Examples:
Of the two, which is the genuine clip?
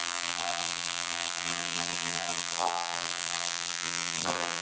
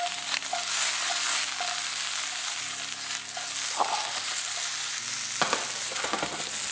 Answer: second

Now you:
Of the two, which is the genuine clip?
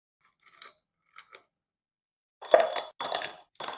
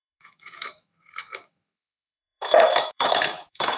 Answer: first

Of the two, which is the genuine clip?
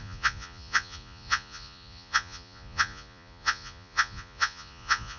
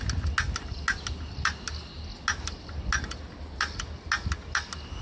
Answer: second